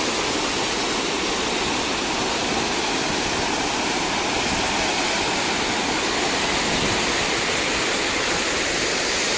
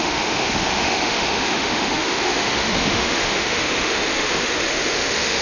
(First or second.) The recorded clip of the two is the first